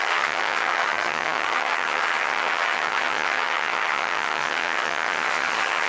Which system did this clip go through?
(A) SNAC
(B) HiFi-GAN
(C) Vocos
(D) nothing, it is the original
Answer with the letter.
B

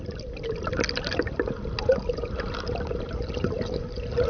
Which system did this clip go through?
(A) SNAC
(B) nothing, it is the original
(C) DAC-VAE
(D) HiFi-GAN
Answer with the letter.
B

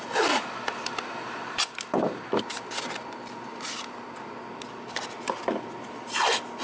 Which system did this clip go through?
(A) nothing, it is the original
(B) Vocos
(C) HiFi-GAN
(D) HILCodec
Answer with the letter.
A